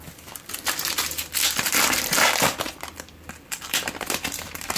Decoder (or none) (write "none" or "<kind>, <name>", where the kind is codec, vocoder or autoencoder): vocoder, BigVGAN v2